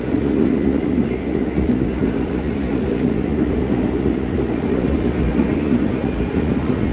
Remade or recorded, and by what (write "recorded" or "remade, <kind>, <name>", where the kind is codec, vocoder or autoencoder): remade, vocoder, Vocos